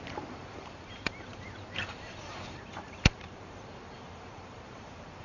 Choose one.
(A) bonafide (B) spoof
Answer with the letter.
B